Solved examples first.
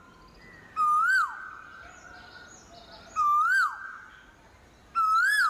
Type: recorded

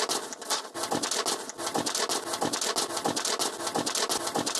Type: recorded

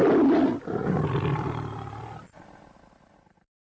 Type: recorded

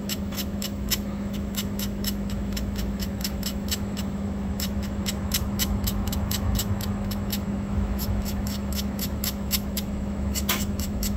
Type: remade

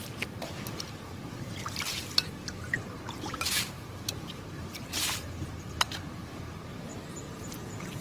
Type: remade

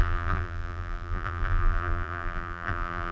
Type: remade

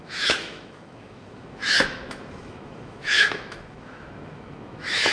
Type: remade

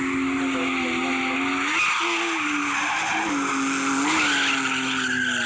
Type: recorded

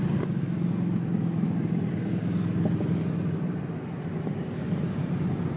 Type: recorded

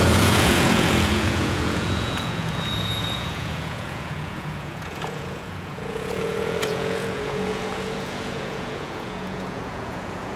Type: remade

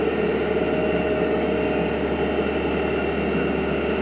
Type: recorded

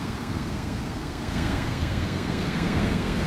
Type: remade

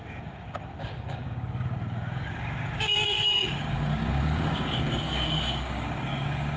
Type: remade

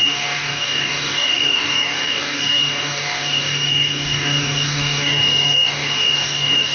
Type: remade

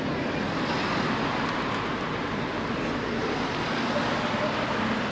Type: recorded